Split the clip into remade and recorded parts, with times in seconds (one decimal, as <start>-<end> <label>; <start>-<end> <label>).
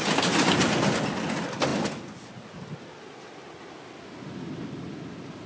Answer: 0.0-5.5 recorded